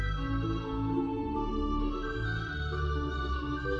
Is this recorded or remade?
recorded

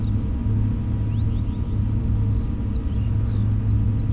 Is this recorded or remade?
recorded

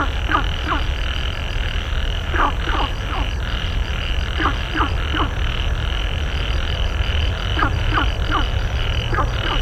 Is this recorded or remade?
recorded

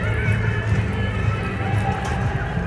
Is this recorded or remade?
recorded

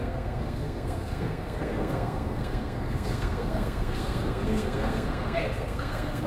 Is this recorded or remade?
remade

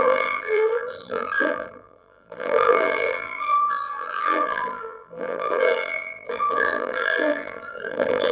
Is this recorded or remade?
remade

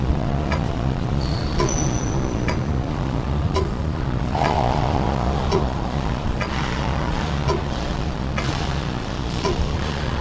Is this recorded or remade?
remade